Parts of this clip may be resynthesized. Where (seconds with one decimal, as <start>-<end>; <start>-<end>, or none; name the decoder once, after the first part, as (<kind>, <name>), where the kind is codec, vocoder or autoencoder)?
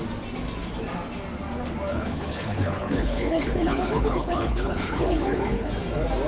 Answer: 1.9-5.7 (codec, HILCodec)